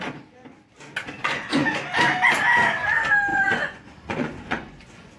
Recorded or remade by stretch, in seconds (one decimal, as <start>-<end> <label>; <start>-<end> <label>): 0.0-1.2 recorded; 1.2-1.8 remade; 1.8-3.3 recorded; 3.3-5.2 remade